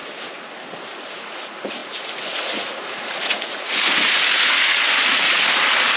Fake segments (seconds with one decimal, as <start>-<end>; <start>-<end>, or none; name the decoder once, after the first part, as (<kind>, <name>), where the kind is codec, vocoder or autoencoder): 0.9-6.0 (vocoder, Vocos)